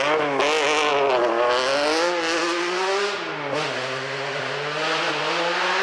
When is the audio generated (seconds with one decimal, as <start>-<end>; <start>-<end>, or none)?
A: none